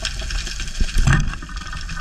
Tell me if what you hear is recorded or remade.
recorded